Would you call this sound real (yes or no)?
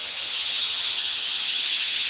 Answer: no